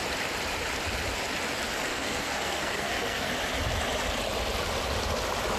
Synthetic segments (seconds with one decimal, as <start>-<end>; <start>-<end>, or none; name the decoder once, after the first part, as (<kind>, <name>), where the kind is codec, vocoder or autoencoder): 1.9-3.3 (codec, SNAC)